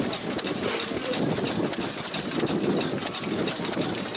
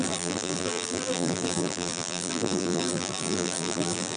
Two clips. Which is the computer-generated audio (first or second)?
second